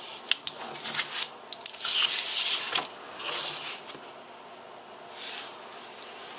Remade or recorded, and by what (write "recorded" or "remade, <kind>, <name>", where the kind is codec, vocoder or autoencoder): recorded